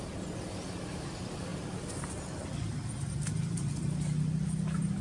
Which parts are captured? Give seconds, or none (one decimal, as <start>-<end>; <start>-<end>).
0.0-5.0